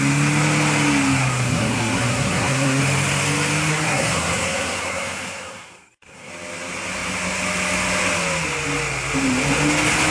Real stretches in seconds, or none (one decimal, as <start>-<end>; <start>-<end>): 0.0-1.2; 2.8-3.7; 6.3-10.1